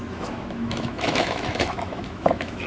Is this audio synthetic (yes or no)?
yes